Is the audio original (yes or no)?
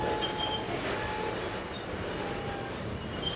yes